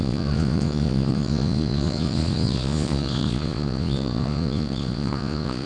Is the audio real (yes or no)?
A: no